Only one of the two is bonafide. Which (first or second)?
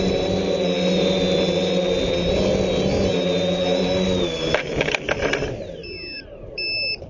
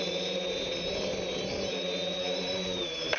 first